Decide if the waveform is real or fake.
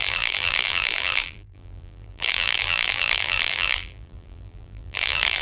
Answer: fake